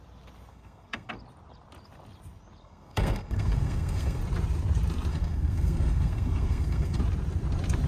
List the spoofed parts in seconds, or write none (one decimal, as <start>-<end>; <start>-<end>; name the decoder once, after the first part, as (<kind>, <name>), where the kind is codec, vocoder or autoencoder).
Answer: 0.5-1.1 (codec, SNAC); 2.6-4.2; 5.1-7.0